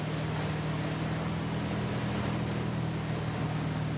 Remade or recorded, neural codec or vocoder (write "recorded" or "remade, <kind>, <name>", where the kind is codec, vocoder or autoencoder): recorded